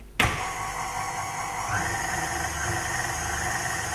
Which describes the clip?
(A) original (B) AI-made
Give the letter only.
A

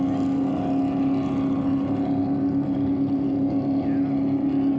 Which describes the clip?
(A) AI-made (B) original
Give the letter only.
B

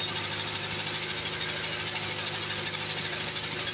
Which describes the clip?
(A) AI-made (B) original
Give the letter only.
B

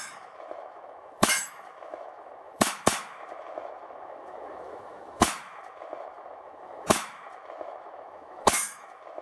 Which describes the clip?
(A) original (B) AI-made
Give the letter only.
B